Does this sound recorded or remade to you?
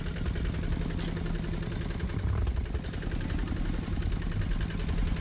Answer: recorded